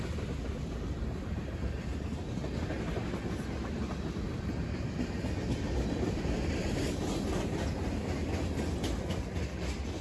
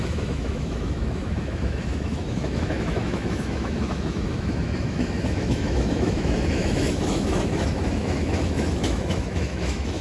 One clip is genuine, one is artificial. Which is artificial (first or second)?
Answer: second